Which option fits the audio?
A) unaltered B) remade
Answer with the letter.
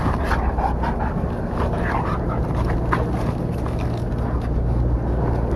A